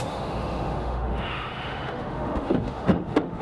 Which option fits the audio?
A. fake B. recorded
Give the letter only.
A